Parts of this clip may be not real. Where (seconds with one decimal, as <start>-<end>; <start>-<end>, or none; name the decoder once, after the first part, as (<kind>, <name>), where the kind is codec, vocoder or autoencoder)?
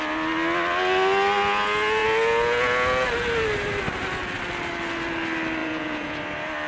5.6-6.2 (vocoder, Vocos)